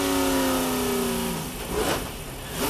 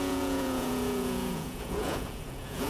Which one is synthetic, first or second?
second